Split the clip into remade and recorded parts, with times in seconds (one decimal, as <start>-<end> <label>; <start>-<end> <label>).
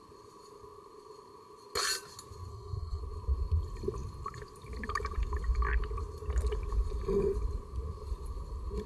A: 0.0-2.5 recorded; 2.5-3.0 remade; 3.0-8.9 recorded